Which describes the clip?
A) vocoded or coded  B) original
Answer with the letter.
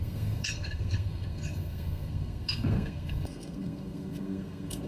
A